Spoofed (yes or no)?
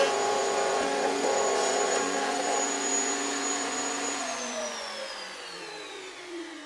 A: yes